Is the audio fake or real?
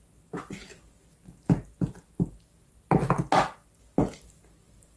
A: real